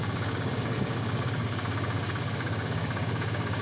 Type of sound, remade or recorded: remade